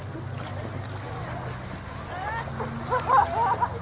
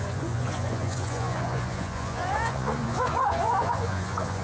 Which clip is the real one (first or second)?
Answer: first